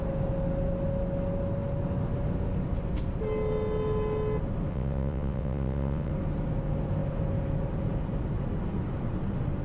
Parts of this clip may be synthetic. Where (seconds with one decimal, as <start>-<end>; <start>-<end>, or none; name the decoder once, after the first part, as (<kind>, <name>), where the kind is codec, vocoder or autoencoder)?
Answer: 4.7-6.1 (vocoder, WaveNeXt)